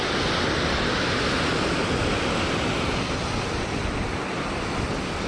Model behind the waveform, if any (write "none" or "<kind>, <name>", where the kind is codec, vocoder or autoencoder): none